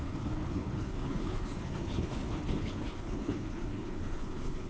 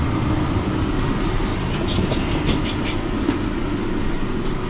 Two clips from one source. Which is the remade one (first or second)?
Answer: first